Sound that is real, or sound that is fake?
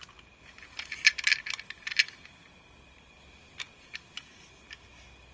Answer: real